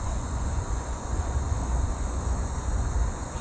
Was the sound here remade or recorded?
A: remade